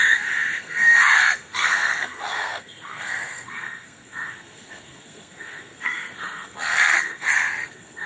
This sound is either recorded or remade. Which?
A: remade